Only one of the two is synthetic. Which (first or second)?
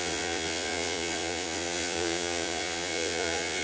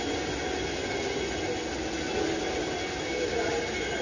first